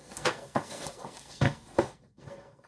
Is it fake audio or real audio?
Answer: fake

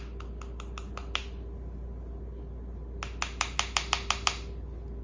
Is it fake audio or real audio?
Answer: real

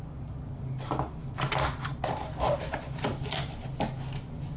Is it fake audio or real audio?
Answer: real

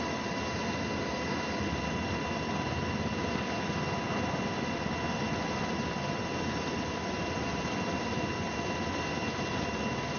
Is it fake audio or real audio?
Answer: real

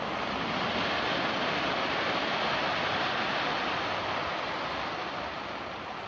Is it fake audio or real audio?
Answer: real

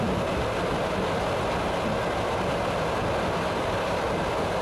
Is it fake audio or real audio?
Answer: real